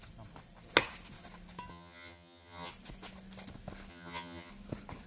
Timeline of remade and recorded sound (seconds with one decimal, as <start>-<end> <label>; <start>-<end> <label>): 0.0-1.7 recorded; 1.7-2.7 remade; 2.7-3.9 recorded; 3.9-4.5 remade; 4.5-5.1 recorded